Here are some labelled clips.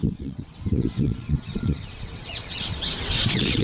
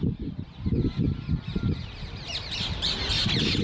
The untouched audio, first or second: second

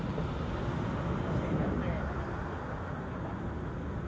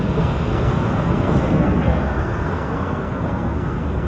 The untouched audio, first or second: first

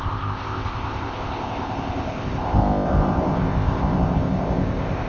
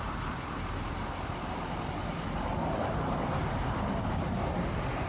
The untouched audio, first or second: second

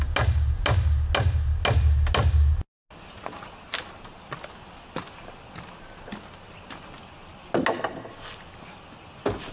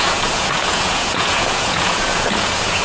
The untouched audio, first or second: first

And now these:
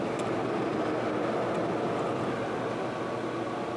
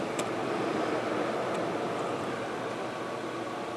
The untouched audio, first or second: first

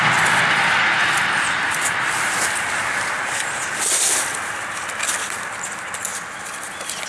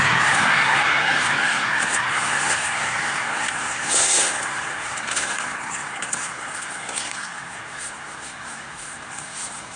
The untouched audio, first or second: first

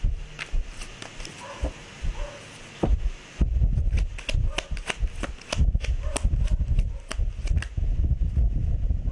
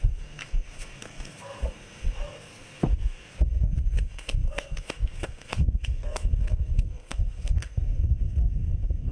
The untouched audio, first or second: first